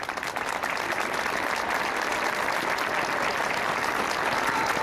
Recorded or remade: remade